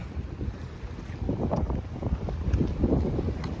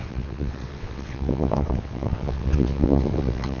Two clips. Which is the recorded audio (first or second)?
first